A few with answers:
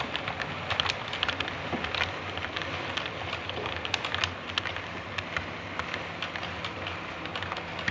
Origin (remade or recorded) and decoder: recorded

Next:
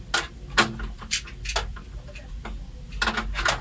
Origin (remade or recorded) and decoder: recorded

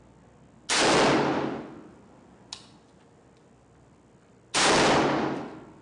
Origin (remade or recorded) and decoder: recorded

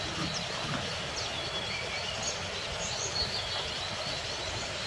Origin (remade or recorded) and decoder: recorded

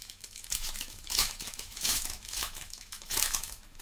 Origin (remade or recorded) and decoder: remade, autoencoder, DAC-VAE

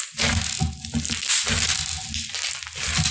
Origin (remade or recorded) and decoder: recorded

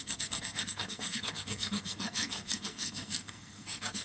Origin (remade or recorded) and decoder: remade, codec, SNAC